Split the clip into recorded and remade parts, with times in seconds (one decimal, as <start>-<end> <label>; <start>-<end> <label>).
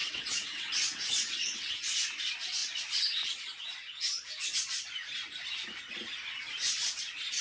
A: 0.0-1.7 remade; 1.7-7.4 recorded